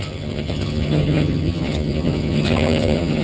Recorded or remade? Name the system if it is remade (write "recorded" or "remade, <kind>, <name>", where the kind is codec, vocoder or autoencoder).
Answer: remade, vocoder, HiFi-GAN